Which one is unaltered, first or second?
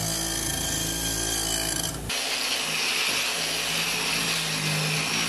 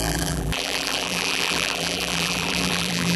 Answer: first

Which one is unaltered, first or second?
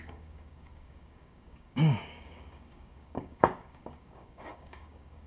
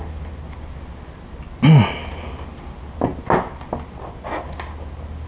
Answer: second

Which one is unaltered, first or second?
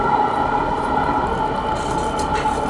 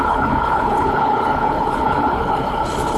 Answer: first